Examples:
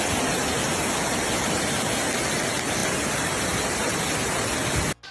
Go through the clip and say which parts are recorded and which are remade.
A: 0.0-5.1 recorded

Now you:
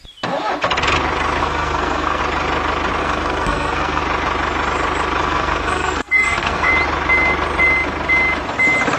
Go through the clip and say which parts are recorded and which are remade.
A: 0.0-1.4 recorded; 1.4-2.2 remade; 2.2-3.0 recorded; 3.0-4.0 remade; 4.0-5.2 recorded; 5.2-6.7 remade; 6.7-9.0 recorded

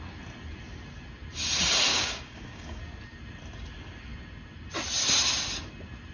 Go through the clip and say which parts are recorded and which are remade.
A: 0.0-1.9 recorded; 1.9-2.8 remade; 2.8-6.1 recorded